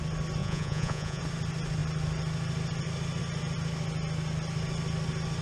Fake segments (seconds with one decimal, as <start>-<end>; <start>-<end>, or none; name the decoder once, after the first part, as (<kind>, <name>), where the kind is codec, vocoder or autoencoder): 0.4-1.2 (vocoder, Vocos)